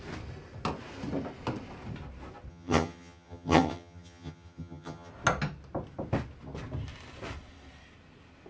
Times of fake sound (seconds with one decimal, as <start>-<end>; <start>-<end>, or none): 2.5-5.1